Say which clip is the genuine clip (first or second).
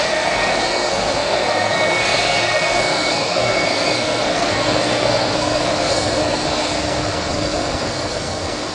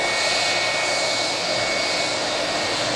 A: second